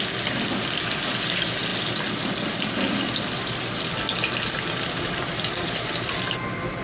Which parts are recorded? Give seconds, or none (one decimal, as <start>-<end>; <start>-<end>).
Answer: 0.0-6.8